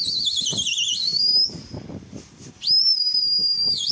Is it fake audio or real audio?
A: fake